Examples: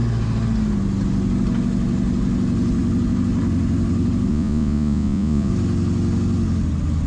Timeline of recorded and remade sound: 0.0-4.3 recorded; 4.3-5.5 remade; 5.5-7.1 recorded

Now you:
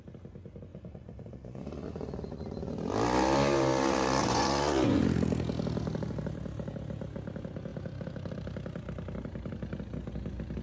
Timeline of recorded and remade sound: 0.0-0.7 recorded; 0.7-2.7 remade; 2.7-4.2 recorded; 4.2-5.0 remade; 5.0-10.6 recorded

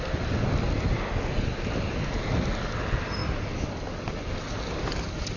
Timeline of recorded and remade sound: 0.0-5.4 recorded

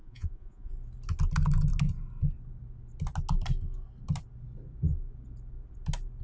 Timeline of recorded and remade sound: 0.0-0.7 remade; 0.7-6.2 recorded

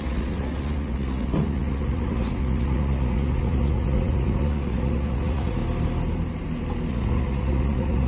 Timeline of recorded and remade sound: 0.0-5.6 remade; 5.6-6.9 recorded; 6.9-8.1 remade

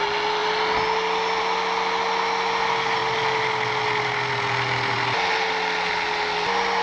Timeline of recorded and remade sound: 0.0-6.8 recorded